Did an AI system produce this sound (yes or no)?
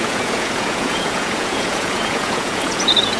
yes